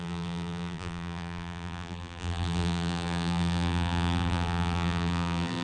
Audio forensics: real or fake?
fake